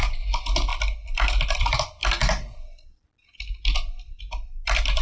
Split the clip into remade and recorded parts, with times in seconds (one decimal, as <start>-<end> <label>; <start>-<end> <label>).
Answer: 0.0-5.0 recorded